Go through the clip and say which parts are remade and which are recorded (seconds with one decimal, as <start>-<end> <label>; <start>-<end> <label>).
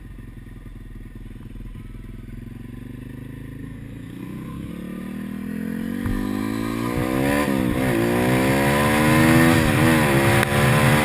0.0-3.6 recorded; 3.6-4.7 remade; 4.7-11.0 recorded